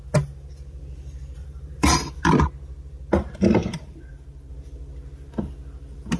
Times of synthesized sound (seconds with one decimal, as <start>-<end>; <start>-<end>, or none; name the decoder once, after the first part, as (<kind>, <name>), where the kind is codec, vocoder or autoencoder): 1.4-2.2 (vocoder, BigVGAN v2); 3.6-4.5